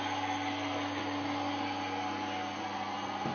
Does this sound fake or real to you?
real